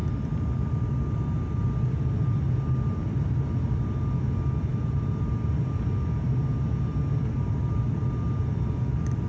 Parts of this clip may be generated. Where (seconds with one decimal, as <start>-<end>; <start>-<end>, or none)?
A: 4.7-5.3